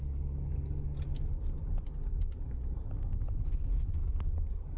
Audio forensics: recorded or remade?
recorded